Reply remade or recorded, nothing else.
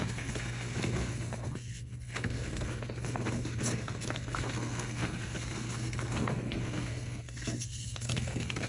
remade